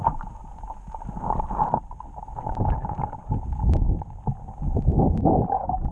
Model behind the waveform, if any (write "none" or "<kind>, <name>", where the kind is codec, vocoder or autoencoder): none